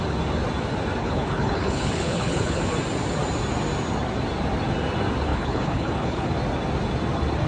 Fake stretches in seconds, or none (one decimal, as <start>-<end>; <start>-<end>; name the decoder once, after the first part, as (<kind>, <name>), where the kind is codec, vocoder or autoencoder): 1.0-2.6 (codec, HILCodec); 5.3-6.3